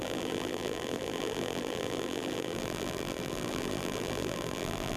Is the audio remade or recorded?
remade